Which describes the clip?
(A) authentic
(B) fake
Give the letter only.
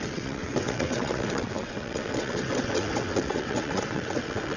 B